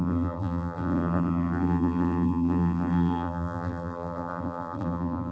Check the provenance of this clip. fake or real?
fake